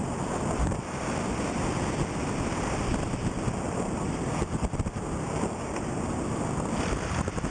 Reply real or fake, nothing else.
real